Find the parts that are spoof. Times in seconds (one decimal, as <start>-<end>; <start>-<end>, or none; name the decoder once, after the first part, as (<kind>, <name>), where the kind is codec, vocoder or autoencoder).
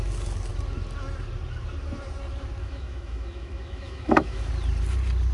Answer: 2.6-4.5 (autoencoder, DAC-VAE)